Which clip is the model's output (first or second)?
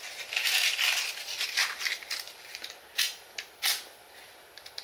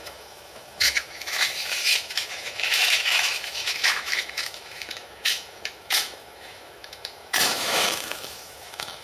second